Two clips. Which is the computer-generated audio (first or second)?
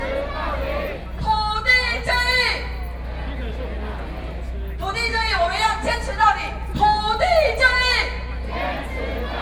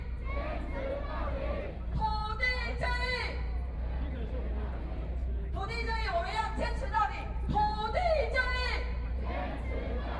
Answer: second